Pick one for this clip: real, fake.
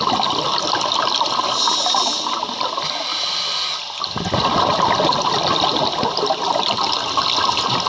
real